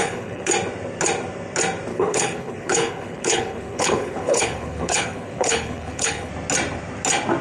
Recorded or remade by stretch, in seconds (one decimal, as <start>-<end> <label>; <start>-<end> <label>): 0.0-0.5 remade; 0.5-1.9 recorded; 1.9-6.3 remade; 6.3-7.4 recorded